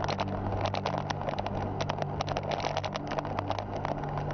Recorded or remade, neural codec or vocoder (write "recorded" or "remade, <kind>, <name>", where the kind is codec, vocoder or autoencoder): recorded